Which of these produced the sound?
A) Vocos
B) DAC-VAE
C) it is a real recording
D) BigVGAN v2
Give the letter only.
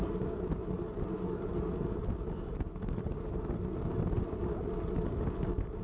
C